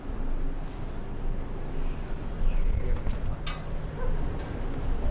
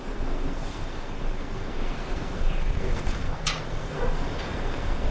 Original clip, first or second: first